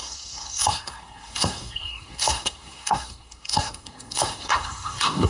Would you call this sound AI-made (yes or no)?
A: yes